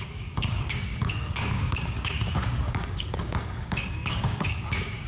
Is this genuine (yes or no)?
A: no